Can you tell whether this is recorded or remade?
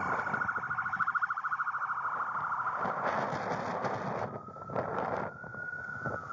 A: recorded